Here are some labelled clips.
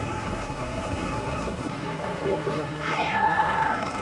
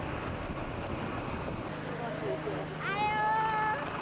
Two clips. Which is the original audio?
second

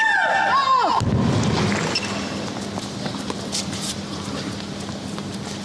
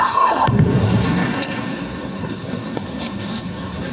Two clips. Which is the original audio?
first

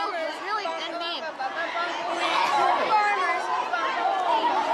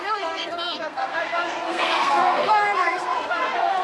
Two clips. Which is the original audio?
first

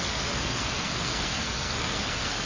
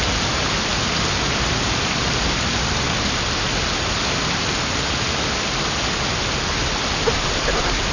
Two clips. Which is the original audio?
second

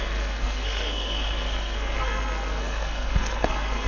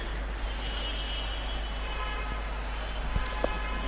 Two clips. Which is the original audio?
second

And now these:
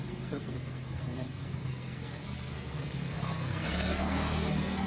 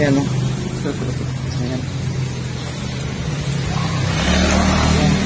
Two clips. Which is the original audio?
second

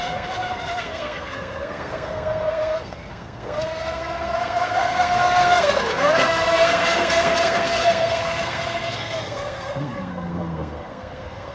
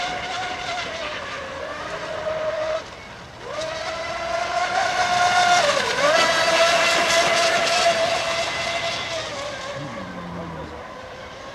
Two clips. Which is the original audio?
second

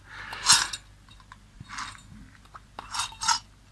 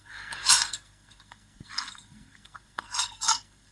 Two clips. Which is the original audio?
first